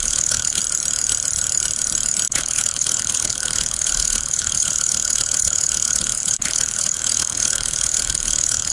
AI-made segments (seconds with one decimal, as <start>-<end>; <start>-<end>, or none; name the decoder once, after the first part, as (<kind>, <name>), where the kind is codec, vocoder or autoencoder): 0.0-0.6 (codec, HILCodec); 2.3-8.7